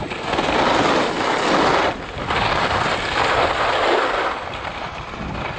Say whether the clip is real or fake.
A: real